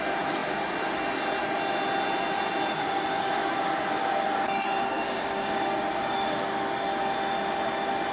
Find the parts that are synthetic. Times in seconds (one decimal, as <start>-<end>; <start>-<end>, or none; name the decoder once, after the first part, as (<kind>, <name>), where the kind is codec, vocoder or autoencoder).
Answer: 2.7-7.0 (codec, DAC)